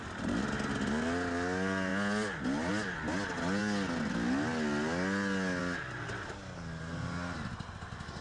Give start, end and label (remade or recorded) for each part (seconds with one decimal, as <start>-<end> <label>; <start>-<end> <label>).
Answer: 0.0-8.2 recorded